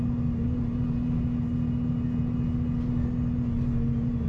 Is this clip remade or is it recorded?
recorded